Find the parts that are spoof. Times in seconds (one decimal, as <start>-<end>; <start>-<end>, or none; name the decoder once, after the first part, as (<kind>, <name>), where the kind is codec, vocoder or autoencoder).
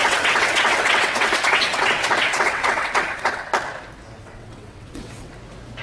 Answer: 0.0-3.5 (vocoder, WaveNeXt); 4.2-5.3